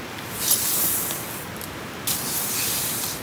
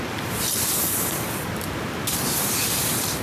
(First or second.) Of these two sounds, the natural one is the first